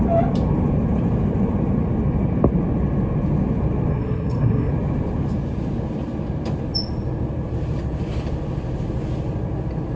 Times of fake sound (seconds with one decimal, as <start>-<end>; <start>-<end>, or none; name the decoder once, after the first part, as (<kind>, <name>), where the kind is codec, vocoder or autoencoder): 3.9-4.7 (codec, SNAC)